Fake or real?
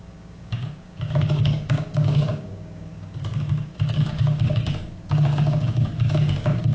fake